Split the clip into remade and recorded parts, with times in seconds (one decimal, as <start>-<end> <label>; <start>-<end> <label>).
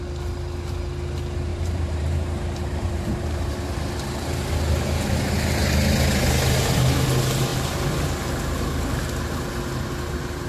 0.0-1.5 recorded; 1.5-4.5 remade; 4.5-10.5 recorded